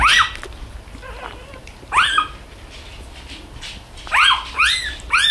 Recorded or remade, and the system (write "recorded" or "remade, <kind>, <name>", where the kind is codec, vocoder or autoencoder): recorded